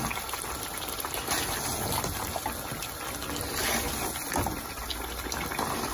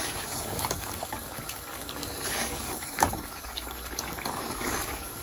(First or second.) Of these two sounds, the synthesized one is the second